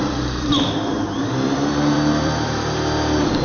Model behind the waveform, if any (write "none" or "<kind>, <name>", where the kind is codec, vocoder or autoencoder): vocoder, BigVGAN v2